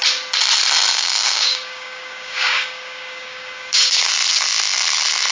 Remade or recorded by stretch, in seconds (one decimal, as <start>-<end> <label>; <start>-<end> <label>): 0.0-0.9 recorded; 0.9-4.1 remade; 4.1-5.3 recorded